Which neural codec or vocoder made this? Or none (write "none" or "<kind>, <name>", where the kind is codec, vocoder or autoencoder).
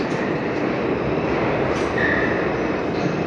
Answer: none